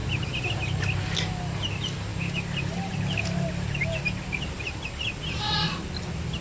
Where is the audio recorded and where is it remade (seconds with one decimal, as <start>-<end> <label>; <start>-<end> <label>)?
0.0-6.4 recorded